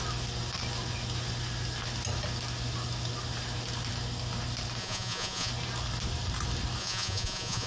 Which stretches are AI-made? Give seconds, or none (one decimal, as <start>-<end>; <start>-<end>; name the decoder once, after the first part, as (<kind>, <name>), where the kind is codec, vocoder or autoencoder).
4.8-5.5 (vocoder, Vocos); 6.8-7.7